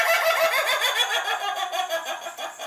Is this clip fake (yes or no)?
no